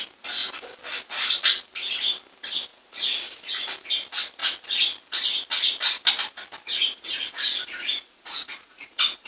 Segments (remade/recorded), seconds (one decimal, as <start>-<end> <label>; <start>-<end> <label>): 0.0-2.7 recorded; 2.7-3.4 remade; 3.4-6.7 recorded; 6.7-9.3 remade